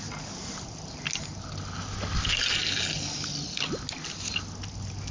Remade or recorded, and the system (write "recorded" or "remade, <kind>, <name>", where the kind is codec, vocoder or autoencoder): recorded